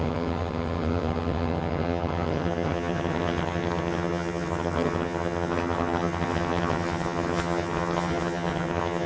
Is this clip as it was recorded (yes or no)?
no